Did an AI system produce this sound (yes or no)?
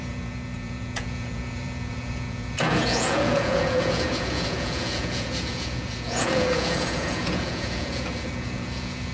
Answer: yes